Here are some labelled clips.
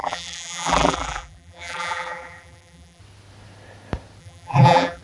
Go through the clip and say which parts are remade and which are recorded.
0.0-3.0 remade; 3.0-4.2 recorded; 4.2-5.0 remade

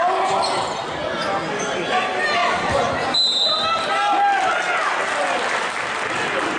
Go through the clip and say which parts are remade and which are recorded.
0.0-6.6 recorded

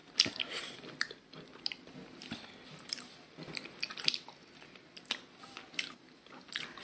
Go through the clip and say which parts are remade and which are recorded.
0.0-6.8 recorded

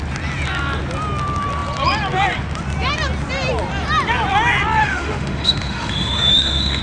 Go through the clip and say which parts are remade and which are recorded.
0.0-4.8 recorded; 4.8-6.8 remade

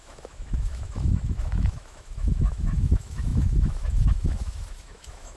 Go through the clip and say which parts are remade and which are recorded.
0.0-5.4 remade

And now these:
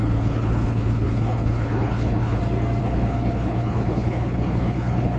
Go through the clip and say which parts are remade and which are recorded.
0.0-2.4 remade; 2.4-2.8 recorded; 2.8-5.2 remade

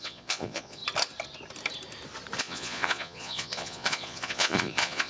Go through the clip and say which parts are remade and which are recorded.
0.0-0.8 remade; 0.8-2.4 recorded; 2.4-5.1 remade